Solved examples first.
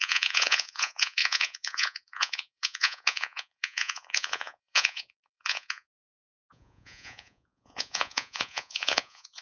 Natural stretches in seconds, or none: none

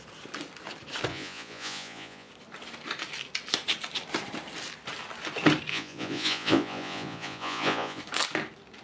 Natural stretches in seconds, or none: 0.0-1.1; 2.3-5.7; 8.0-8.8

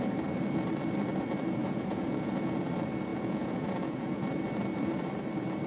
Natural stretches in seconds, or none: 0.0-1.6; 2.3-3.1; 4.2-5.7